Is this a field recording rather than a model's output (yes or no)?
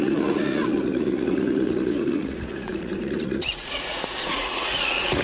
no